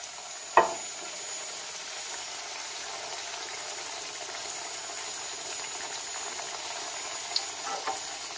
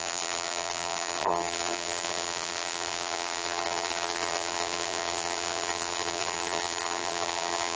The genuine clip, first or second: first